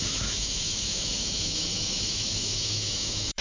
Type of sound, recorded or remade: remade